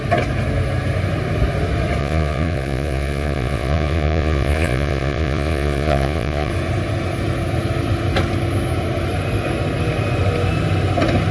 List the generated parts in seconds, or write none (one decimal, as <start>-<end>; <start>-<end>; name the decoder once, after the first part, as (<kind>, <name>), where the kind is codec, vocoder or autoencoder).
2.0-6.5 (vocoder, Vocos)